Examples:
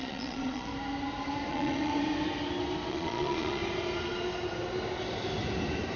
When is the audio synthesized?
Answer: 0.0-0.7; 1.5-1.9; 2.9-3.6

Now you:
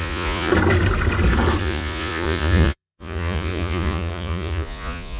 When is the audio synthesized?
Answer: 0.0-0.5; 1.6-5.2

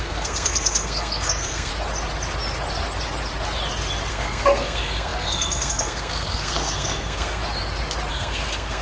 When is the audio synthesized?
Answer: 0.0-1.7; 4.1-7.4; 8.1-8.8

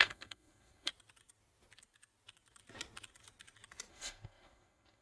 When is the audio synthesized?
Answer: 0.0-0.9; 3.9-5.0